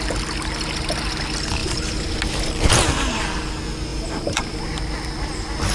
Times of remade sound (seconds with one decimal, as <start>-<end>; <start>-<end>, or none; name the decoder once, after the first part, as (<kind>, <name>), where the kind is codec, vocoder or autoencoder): 3.9-4.7 (vocoder, BigVGAN v2)